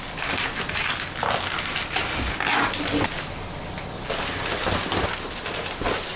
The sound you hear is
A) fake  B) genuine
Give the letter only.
B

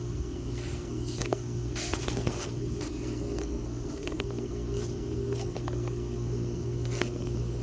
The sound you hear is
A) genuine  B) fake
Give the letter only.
B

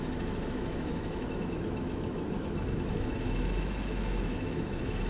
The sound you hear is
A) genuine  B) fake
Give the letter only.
B